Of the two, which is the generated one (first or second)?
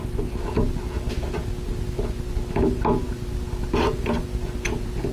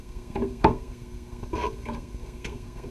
second